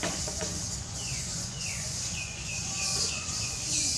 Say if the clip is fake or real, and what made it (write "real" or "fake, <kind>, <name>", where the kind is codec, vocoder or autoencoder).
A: fake, vocoder, Vocos